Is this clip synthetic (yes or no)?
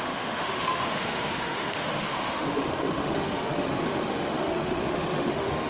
yes